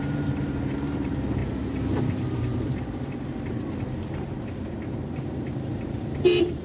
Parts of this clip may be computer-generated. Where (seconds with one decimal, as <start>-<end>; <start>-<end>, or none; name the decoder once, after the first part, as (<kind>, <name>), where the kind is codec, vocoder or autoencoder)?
0.0-6.6 (vocoder, BigVGAN v2)